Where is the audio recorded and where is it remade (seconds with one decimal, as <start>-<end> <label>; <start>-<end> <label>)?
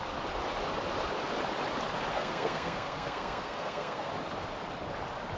0.0-2.1 recorded; 2.1-4.1 remade; 4.1-5.4 recorded